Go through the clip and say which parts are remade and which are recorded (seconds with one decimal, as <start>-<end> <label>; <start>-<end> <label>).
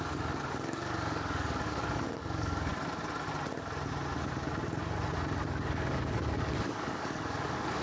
0.0-2.7 remade; 2.7-5.4 recorded; 5.4-7.8 remade